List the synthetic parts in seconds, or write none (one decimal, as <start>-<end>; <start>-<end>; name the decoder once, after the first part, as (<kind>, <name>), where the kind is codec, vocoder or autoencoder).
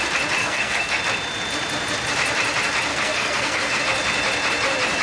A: 0.4-1.0 (codec, SNAC); 2.9-3.8